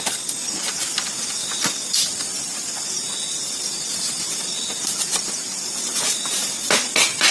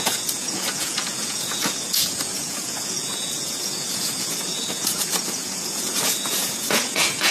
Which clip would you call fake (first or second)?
second